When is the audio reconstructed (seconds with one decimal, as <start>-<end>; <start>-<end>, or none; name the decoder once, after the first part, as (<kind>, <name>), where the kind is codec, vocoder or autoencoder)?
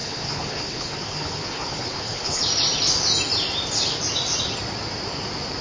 0.0-2.4 (codec, HILCodec)